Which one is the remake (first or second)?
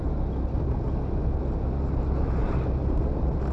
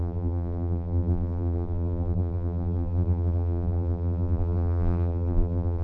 second